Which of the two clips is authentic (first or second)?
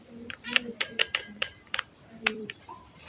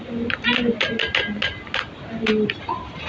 second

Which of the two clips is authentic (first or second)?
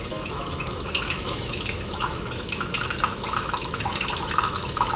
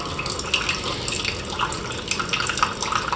second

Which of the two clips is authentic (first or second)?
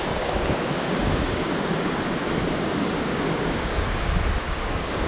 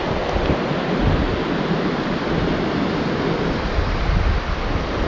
second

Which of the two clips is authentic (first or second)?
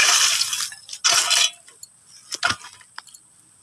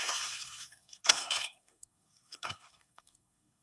first